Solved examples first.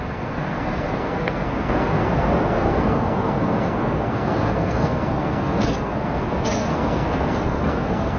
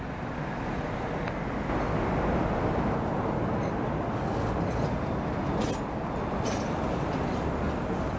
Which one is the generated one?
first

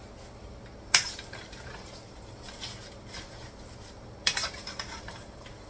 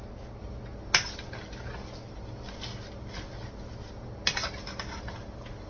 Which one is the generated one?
first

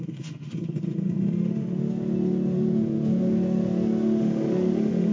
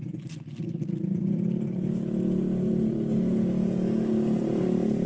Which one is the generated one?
first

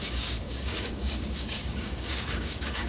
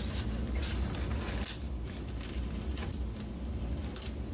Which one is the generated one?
first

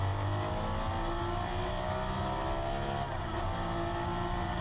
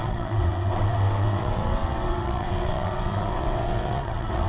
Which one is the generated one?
second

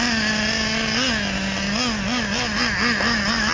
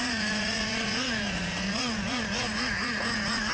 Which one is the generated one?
second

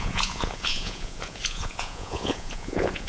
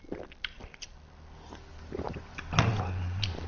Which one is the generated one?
first